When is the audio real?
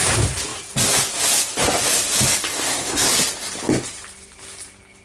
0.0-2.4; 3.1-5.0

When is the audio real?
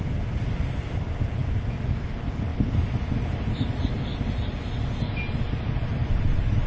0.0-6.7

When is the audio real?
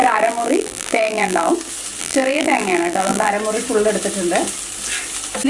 1.5-2.0; 3.3-5.5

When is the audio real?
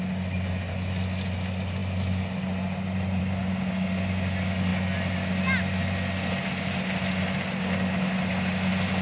0.0-9.0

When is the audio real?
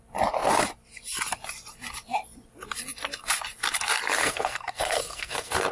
0.0-4.2